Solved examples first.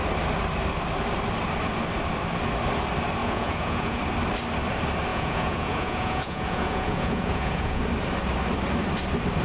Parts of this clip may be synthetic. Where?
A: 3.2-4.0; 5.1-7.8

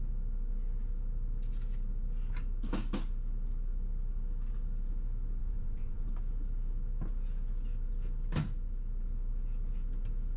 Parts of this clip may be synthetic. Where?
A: 5.4-6.1